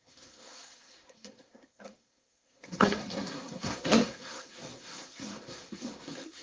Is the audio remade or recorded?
remade